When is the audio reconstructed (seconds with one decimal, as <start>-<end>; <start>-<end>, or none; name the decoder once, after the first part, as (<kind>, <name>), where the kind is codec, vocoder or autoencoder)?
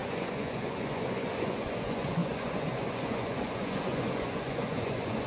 0.0-5.3 (vocoder, Vocos)